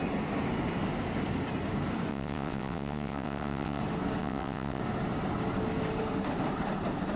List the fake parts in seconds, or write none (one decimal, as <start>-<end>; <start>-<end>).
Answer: 2.1-3.8; 4.2-4.8